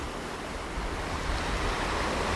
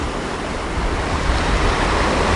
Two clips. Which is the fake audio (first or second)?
second